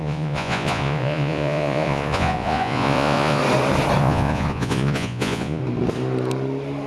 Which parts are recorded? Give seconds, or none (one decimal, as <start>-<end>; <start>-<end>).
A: 3.4-4.0; 5.6-6.9